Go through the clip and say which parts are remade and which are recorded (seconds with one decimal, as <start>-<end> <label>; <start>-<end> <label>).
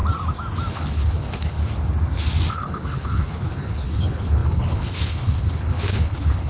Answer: 0.0-0.7 recorded; 0.7-1.6 remade; 1.6-2.5 recorded; 2.5-6.5 remade